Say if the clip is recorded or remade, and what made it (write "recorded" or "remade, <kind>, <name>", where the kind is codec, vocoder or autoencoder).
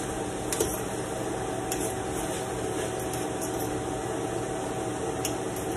recorded